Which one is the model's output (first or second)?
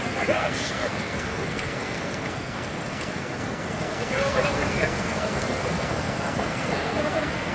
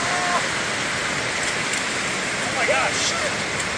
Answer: first